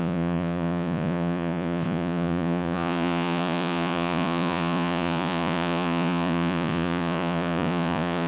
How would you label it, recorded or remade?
remade